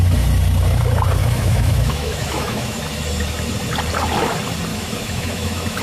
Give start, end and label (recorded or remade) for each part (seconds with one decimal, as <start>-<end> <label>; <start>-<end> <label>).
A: 0.0-1.2 recorded; 1.2-2.8 remade; 2.8-4.7 recorded; 4.7-5.8 remade